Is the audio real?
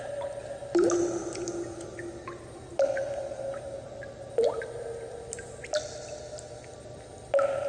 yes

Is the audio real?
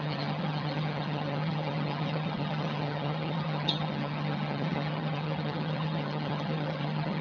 no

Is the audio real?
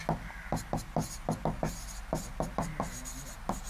yes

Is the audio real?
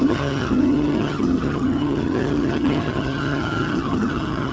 no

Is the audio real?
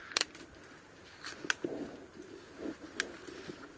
yes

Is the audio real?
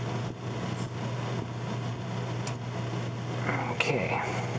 yes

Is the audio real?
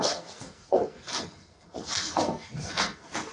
no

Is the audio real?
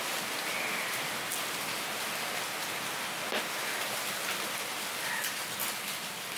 yes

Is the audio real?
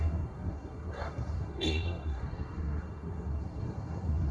no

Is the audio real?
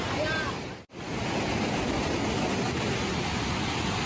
yes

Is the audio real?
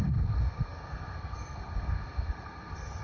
no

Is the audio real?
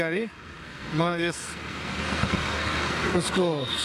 no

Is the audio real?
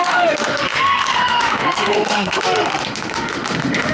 no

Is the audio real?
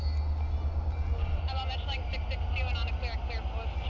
yes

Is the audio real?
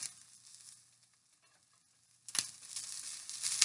yes